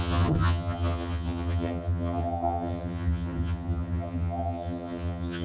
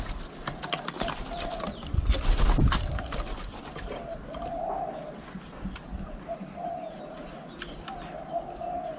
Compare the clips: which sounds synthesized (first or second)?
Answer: first